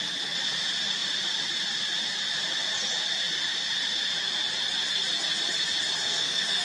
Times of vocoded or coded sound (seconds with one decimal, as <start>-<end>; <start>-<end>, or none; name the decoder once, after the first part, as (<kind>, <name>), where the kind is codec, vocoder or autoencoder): 6.0-6.6 (codec, SNAC)